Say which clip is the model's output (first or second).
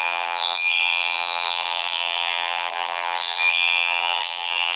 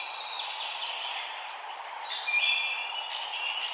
first